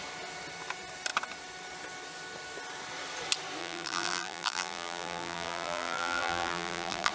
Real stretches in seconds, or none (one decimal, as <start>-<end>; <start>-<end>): 0.0-3.6